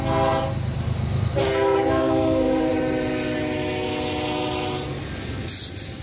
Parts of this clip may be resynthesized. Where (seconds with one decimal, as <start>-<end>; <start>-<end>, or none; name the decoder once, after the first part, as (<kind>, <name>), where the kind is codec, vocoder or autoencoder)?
1.4-2.7 (codec, SNAC)